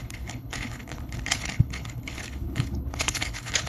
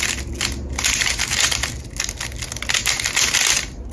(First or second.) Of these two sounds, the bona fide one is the second